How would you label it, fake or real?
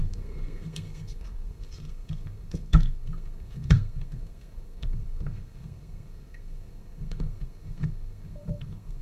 fake